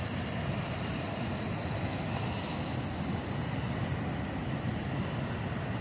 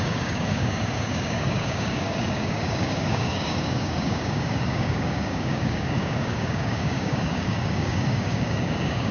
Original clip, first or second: first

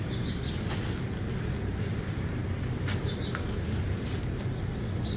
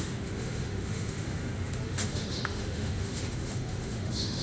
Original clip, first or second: first